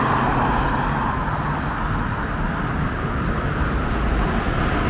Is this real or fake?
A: real